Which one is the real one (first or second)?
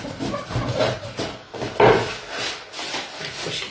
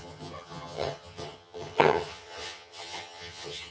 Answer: first